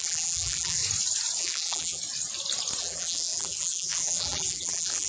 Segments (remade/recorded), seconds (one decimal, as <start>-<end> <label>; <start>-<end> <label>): 0.0-0.8 remade; 0.8-1.4 recorded; 1.4-2.0 remade; 2.0-2.8 recorded; 2.8-5.1 remade